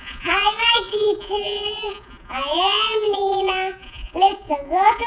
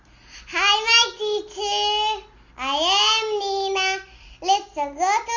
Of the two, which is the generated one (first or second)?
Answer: first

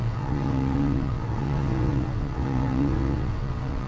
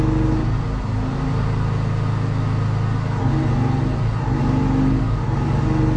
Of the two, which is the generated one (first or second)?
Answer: first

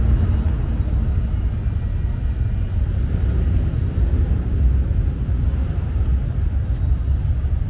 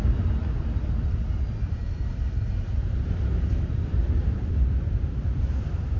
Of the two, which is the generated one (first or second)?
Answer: second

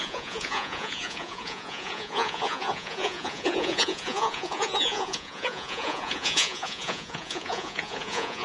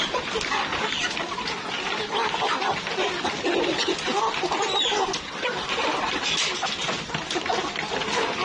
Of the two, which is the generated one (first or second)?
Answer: first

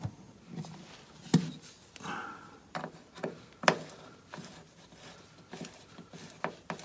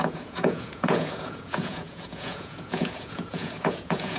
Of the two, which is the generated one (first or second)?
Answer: second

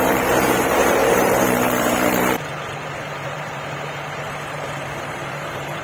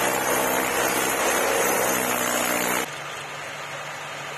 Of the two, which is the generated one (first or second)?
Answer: first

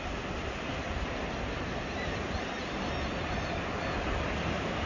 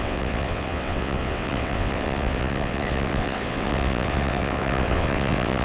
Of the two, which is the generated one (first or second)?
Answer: second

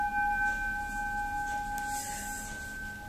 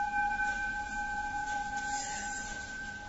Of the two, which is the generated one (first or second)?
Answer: second